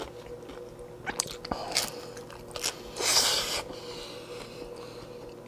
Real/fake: real